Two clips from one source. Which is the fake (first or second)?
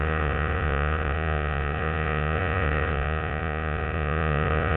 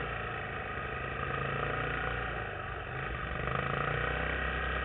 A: first